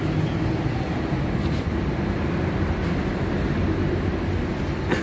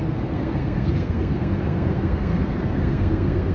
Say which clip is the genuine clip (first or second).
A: first